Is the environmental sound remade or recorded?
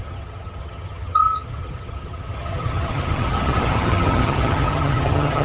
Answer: remade